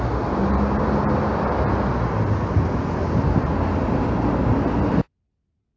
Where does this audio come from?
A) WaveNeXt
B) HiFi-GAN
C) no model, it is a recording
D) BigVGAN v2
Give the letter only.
C